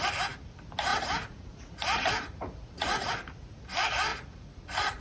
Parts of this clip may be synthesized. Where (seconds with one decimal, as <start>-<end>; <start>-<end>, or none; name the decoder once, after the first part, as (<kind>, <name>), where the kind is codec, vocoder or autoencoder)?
0.9-3.1 (vocoder, Vocos); 4.1-5.0